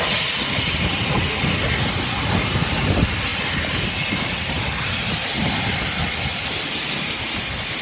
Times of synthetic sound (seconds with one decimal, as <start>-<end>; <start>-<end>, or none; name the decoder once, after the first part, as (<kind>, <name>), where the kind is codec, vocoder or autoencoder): 6.3-7.3 (vocoder, BigVGAN v2)